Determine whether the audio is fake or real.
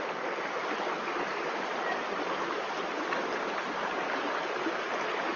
real